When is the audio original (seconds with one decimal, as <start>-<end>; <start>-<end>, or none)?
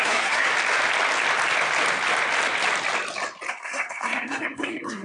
0.5-3.5